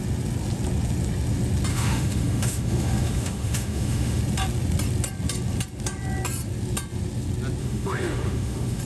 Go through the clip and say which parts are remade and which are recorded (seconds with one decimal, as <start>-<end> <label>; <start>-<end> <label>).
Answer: 0.0-1.7 recorded; 1.7-4.2 remade; 4.2-7.6 recorded; 7.6-8.8 remade